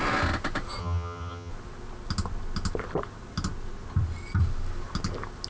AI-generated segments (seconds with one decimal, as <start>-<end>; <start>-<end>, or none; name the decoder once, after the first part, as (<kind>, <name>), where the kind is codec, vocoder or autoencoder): 0.8-1.5 (vocoder, HiFi-GAN)